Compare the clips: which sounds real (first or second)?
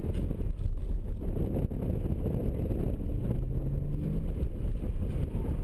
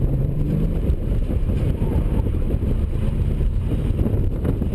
first